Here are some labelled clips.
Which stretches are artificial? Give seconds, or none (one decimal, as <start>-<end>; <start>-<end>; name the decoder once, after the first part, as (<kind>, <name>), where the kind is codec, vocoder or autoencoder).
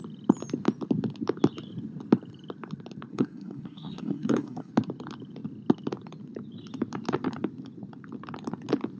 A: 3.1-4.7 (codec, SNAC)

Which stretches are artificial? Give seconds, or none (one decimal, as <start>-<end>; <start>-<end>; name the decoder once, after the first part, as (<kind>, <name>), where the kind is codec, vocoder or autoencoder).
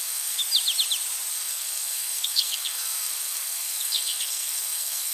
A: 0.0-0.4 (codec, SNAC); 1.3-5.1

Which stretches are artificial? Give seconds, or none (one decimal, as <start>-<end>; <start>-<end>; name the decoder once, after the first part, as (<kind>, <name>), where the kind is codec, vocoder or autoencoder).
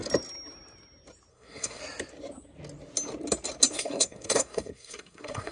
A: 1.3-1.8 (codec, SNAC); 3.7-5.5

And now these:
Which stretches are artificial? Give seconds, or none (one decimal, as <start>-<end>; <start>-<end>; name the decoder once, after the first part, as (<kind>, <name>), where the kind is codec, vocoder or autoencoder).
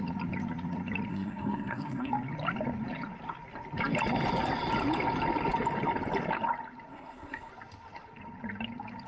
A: 1.1-2.1 (codec, SNAC); 6.9-7.5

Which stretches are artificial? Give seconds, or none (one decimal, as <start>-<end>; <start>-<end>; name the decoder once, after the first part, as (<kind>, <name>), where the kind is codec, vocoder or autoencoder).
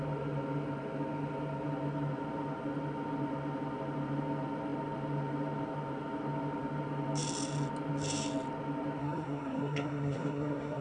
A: 9.0-10.8 (codec, SNAC)